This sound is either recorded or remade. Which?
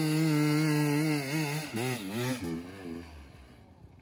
recorded